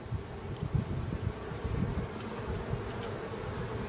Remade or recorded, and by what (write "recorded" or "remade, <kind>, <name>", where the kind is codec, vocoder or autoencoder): remade, vocoder, BigVGAN v2